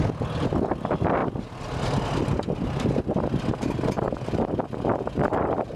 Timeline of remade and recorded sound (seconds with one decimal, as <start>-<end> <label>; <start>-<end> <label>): 0.0-5.8 recorded